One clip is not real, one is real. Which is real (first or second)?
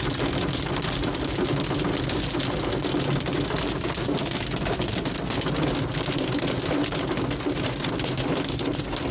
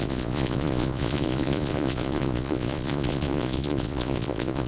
first